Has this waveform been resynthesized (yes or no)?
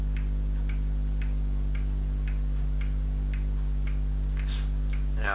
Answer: no